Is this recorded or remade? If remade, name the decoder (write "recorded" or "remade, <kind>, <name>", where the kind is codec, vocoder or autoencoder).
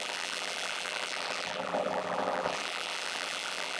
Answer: remade, vocoder, BigVGAN v2